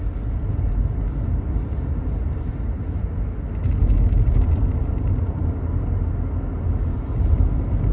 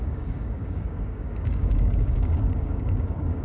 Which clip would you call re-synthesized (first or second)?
second